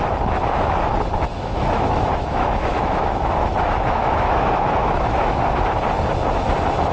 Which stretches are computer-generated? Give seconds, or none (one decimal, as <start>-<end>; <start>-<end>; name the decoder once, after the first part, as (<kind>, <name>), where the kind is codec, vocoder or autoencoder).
1.3-5.4 (autoencoder, DAC-VAE)